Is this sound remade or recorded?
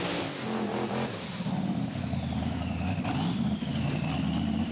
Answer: recorded